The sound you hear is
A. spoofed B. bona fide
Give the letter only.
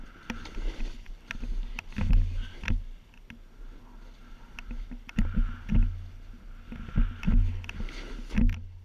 B